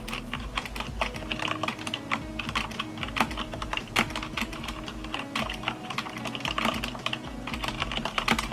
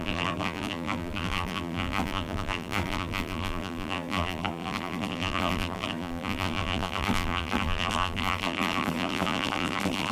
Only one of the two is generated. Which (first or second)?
second